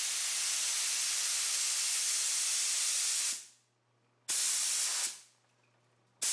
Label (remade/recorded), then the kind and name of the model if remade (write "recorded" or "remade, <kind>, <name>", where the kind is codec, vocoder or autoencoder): recorded